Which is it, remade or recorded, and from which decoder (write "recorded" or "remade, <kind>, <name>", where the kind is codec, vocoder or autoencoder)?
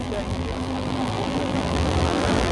remade, vocoder, BigVGAN v2